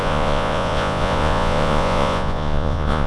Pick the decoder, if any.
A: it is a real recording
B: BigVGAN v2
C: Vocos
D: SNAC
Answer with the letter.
C